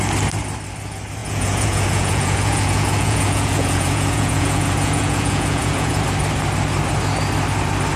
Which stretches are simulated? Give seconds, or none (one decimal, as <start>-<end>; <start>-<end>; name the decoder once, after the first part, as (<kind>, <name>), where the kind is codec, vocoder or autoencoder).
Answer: 1.2-6.0 (vocoder, Vocos)